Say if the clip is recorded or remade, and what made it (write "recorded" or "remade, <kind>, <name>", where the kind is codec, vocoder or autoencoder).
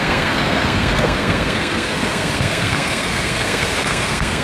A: remade, codec, SNAC